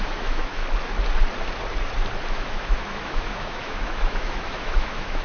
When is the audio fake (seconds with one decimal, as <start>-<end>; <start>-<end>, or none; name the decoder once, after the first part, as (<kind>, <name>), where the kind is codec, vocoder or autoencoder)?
0.0-0.6 (autoencoder, DAC-VAE); 2.3-5.2